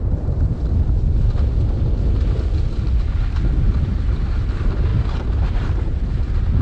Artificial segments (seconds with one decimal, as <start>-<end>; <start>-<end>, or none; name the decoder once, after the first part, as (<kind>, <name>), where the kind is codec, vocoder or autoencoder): 4.9-6.0 (vocoder, BigVGAN v2)